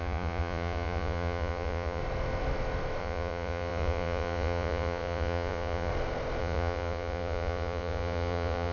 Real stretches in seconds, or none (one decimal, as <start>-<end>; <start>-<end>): 2.0-3.0; 5.9-6.4